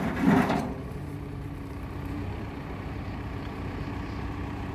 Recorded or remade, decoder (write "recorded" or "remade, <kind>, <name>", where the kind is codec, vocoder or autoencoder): remade, vocoder, BigVGAN v2